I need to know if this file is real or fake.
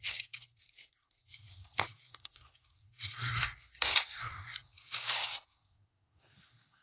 fake